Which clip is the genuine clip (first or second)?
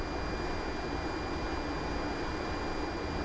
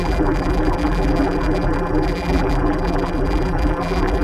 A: first